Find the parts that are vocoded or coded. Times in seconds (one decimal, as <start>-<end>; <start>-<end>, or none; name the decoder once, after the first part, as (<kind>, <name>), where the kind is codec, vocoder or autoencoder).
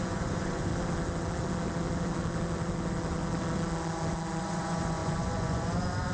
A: 0.0-0.7 (vocoder, Vocos); 4.4-6.1